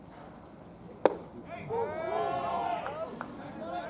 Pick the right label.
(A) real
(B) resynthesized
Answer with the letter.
A